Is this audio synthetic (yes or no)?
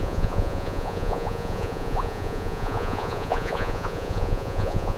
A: yes